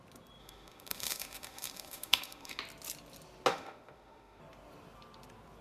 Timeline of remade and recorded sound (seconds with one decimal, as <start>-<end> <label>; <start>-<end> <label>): 0.0-0.4 recorded; 0.4-2.6 remade; 2.6-3.5 recorded; 3.5-4.4 remade; 4.4-5.6 recorded